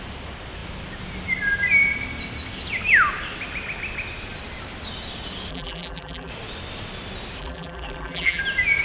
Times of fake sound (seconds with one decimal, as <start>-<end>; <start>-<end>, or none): 5.5-6.3; 7.4-8.4